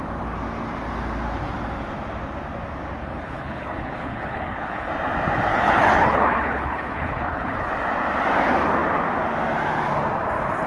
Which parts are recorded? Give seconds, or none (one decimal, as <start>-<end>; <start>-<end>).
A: 0.0-3.0; 4.9-5.5; 7.7-10.7